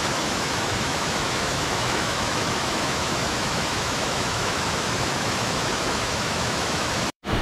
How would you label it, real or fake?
fake